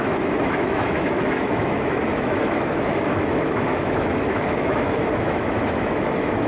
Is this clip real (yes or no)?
no